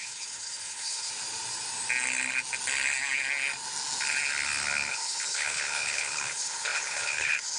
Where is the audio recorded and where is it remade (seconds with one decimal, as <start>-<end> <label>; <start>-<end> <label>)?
0.0-1.1 remade; 1.1-4.9 recorded; 4.9-7.6 remade